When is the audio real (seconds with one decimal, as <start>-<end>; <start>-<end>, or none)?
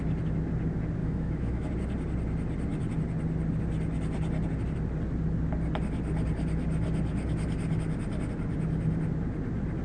0.0-1.0; 1.7-9.8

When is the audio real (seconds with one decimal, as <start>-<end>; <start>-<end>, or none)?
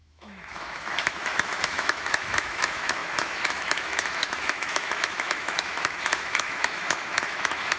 none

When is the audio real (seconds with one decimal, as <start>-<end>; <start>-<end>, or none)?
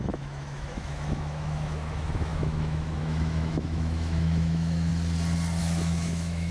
4.9-5.6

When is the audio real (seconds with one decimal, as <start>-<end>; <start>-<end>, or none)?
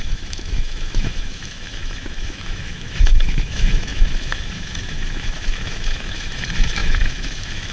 none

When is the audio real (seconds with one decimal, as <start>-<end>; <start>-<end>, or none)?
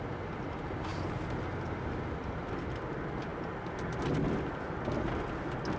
0.0-5.8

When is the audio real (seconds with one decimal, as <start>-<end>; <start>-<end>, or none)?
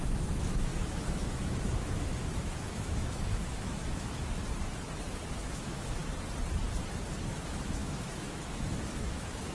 4.4-5.1; 6.0-7.3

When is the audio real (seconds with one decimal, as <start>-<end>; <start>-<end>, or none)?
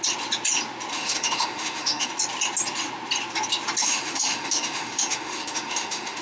0.0-0.9; 2.1-3.8